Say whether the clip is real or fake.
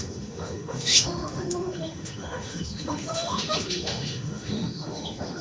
fake